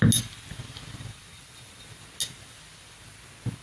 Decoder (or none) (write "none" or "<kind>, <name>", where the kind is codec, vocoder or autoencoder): none